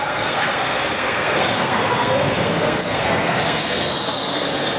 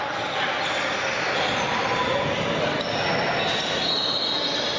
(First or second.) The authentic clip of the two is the second